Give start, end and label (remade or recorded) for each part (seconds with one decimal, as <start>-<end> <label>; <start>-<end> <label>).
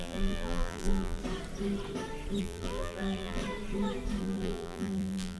0.0-1.2 remade; 1.2-2.4 recorded; 2.4-3.4 remade; 3.4-4.2 recorded; 4.2-5.4 remade